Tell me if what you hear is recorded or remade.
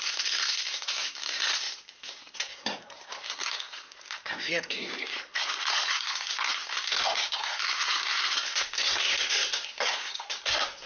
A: remade